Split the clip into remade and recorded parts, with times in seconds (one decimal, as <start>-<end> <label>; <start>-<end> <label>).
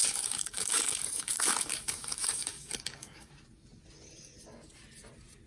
0.0-3.3 remade; 3.3-5.5 recorded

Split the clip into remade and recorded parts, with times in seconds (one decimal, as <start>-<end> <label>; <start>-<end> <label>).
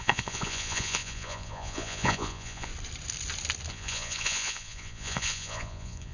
0.0-2.7 remade; 2.7-3.7 recorded; 3.7-6.1 remade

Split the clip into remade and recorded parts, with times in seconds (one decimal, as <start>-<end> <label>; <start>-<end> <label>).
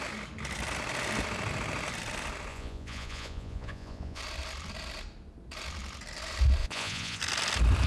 0.0-2.5 recorded; 2.5-4.2 remade; 4.2-6.6 recorded; 6.6-7.2 remade; 7.2-7.9 recorded